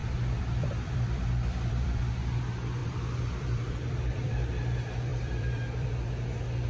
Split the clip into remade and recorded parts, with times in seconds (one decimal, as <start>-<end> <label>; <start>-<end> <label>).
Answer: 0.0-2.1 remade; 2.1-2.8 recorded; 2.8-4.3 remade; 4.3-5.1 recorded; 5.1-5.9 remade; 5.9-6.7 recorded